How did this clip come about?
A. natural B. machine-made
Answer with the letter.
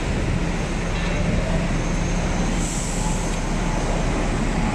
A